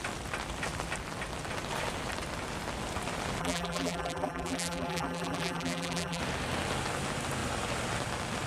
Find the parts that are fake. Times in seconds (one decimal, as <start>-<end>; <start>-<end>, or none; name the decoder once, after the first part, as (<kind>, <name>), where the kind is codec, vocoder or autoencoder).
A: 3.4-6.2 (vocoder, BigVGAN v2)